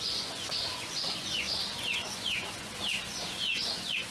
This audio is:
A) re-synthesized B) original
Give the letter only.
A